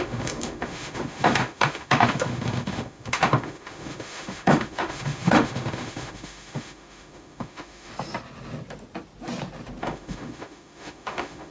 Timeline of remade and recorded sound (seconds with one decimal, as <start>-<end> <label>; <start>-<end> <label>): 0.0-7.9 remade; 7.9-9.8 recorded; 9.8-11.5 remade